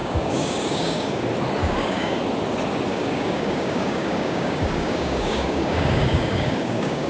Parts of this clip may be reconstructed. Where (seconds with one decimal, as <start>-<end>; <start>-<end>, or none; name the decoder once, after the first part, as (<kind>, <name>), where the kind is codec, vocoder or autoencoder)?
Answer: 0.0-1.2 (codec, DAC); 1.6-2.2; 2.9-7.1